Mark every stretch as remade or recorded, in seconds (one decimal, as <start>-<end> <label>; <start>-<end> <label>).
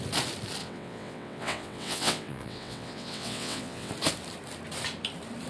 0.0-0.6 recorded; 0.6-3.9 remade; 3.9-5.5 recorded